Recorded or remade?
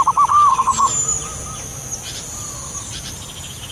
recorded